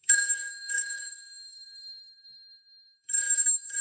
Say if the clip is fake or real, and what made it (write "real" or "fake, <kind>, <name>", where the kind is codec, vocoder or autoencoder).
fake, codec, DAC